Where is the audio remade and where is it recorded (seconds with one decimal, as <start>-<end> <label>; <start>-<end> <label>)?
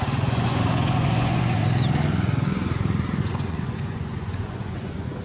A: 0.0-1.6 remade; 1.6-3.2 recorded; 3.2-5.2 remade